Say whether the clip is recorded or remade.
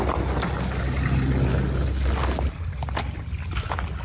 recorded